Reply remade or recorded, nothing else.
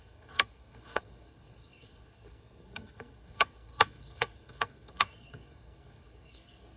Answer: remade